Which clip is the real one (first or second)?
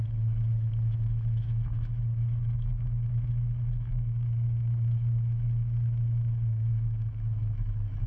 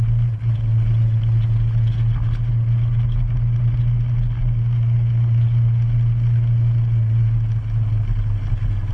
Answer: second